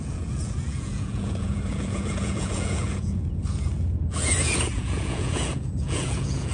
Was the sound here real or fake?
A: fake